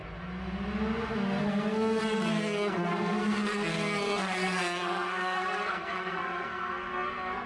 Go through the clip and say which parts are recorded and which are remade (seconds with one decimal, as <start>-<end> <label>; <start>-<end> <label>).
0.0-1.4 recorded; 1.4-7.5 remade